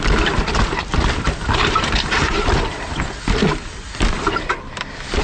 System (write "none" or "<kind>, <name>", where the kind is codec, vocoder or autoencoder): none